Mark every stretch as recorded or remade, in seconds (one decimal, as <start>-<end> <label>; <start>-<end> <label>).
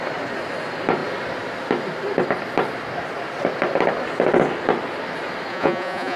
0.0-5.5 recorded; 5.5-6.2 remade